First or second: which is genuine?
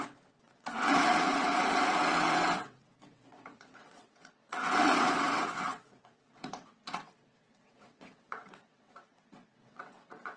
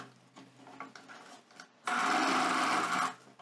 second